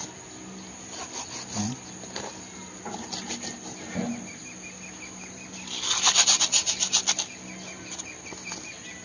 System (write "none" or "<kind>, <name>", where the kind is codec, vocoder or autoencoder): none